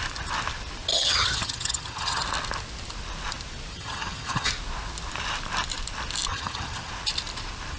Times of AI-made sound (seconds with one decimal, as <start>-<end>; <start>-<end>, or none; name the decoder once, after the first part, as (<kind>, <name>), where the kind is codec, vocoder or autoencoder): 0.9-2.2 (vocoder, HiFi-GAN); 3.7-4.5; 6.3-6.9